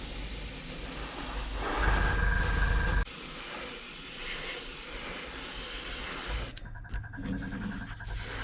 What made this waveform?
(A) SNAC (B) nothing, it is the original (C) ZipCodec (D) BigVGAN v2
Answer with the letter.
B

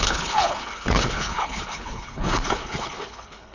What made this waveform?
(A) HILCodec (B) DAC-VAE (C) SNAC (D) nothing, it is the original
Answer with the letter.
A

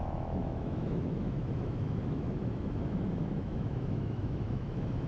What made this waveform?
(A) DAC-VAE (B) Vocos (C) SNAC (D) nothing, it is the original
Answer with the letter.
A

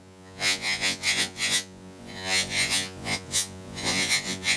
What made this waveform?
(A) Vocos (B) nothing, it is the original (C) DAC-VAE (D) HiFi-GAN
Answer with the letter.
A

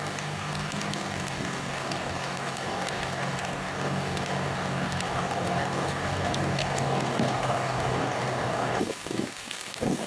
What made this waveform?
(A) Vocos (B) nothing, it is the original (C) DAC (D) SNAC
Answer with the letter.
C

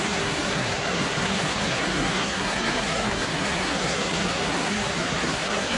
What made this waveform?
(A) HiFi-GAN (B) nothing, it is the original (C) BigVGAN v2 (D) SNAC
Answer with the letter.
D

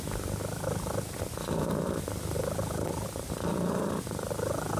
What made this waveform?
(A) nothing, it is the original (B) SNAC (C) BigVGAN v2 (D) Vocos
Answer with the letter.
A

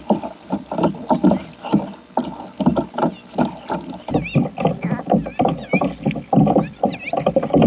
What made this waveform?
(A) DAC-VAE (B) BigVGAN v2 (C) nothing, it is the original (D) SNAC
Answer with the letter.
C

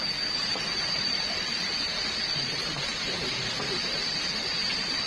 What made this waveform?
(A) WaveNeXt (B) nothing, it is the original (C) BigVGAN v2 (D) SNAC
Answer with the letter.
C